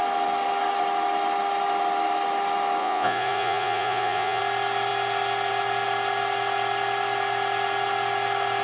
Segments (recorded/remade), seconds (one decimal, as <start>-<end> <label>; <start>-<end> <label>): 0.0-2.8 recorded; 2.8-4.4 remade; 4.4-8.6 recorded

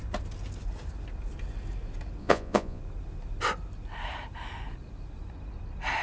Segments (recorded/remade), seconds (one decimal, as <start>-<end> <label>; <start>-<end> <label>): 0.0-2.2 recorded; 2.2-2.8 remade; 2.8-6.0 recorded

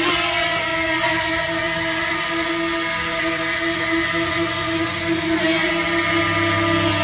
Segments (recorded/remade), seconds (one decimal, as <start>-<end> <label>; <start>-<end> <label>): 0.0-0.7 recorded; 0.7-2.5 remade; 2.5-3.1 recorded; 3.1-5.7 remade; 5.7-7.0 recorded

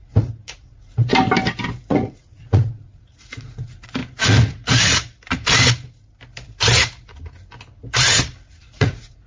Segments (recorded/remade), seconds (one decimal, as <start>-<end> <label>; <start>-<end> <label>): 0.0-1.1 remade; 1.1-1.9 recorded; 1.9-4.0 remade; 4.0-8.5 recorded; 8.5-9.3 remade

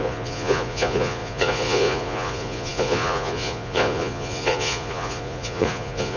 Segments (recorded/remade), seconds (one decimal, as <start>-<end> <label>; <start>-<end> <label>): 0.0-6.2 remade

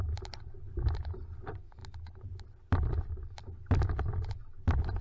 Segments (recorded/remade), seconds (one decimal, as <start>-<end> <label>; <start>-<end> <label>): 0.0-5.0 recorded

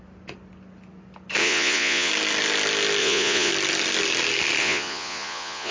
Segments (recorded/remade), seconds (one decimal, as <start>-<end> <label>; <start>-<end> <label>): 0.0-1.4 recorded; 1.4-2.1 remade; 2.1-3.0 recorded; 3.0-3.5 remade; 3.5-4.6 recorded; 4.6-5.7 remade

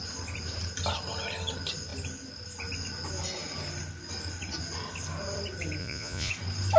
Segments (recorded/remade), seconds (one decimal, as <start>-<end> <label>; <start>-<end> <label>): 0.0-5.8 recorded; 5.8-6.3 remade; 6.3-6.8 recorded